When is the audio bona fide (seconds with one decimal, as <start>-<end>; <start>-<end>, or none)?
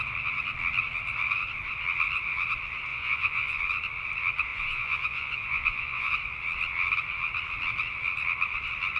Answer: 0.0-2.9; 3.6-4.5; 6.1-9.0